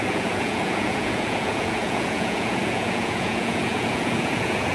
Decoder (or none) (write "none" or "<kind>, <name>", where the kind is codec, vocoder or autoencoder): vocoder, Vocos